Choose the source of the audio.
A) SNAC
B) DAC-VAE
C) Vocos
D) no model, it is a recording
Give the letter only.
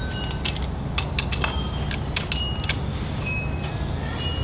D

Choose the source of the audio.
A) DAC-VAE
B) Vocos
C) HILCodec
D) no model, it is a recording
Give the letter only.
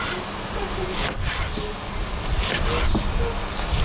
D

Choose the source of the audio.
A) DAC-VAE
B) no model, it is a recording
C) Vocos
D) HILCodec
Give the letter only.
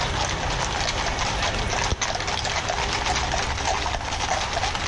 B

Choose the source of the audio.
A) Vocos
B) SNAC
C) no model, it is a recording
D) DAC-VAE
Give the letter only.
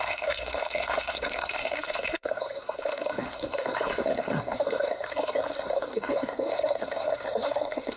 B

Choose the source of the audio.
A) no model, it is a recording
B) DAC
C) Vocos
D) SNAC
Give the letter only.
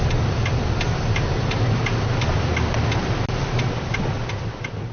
A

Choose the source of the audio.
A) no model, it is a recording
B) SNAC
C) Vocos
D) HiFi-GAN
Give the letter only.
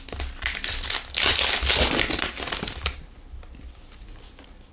A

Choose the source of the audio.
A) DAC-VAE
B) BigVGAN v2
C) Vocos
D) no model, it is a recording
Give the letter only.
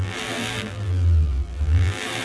B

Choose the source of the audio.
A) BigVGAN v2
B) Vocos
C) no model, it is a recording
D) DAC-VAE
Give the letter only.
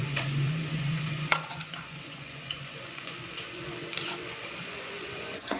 B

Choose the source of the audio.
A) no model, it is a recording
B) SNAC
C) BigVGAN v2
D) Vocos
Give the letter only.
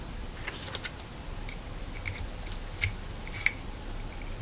A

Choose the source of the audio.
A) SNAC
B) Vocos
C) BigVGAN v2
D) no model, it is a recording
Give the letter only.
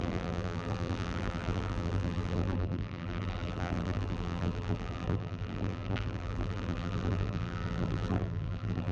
C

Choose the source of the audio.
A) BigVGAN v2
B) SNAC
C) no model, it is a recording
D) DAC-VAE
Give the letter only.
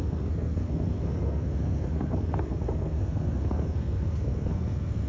B